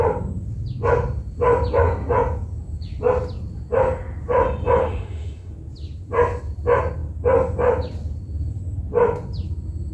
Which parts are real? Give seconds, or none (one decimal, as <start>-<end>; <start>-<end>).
0.0-4.8; 5.5-9.9